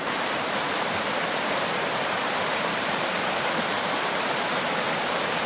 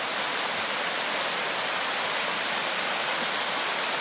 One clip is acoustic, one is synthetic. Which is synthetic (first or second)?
first